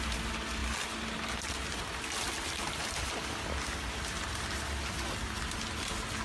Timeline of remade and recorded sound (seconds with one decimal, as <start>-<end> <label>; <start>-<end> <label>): 0.0-6.2 recorded